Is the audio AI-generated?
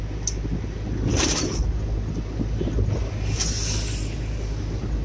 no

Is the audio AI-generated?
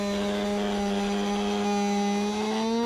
no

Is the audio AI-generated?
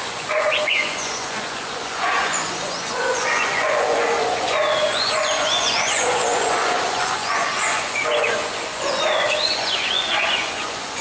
yes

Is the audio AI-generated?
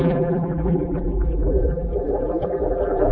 yes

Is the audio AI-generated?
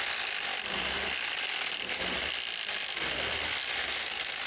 no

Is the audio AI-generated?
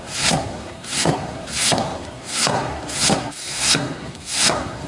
yes